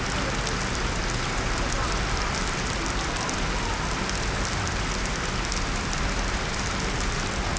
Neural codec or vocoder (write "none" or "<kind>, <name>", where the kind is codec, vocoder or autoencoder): none